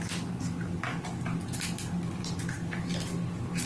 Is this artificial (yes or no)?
no